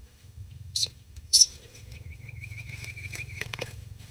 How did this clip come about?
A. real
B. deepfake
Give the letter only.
B